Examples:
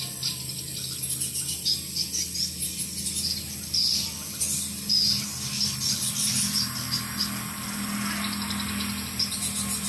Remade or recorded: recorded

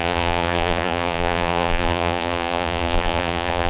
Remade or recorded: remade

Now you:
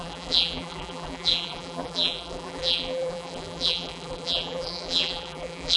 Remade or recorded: remade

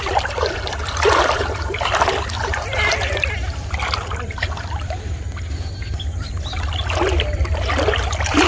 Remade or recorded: remade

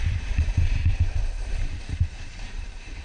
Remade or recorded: remade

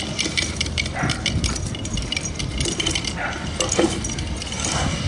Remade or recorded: remade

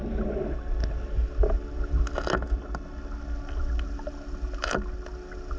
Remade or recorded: recorded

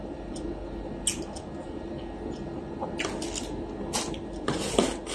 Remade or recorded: recorded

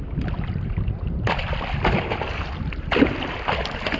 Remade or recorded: recorded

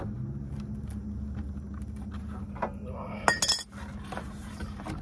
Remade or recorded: recorded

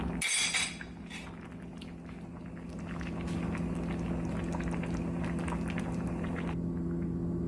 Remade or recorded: recorded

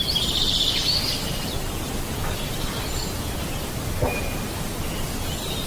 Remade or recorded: recorded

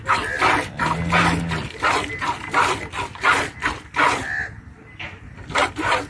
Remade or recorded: recorded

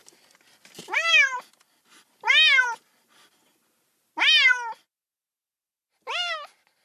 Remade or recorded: recorded